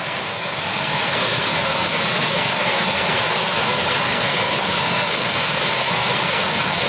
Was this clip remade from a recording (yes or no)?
yes